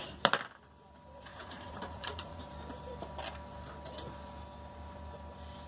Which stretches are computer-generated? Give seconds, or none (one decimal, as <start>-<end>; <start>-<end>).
1.3-2.4